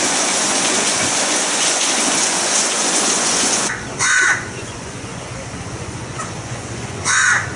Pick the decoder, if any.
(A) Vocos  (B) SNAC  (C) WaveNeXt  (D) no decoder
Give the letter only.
A